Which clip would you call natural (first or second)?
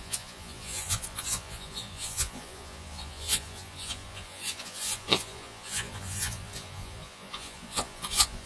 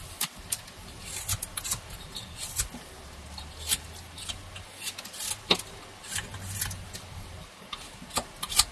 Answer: second